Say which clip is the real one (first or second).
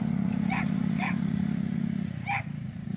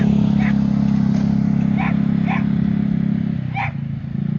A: second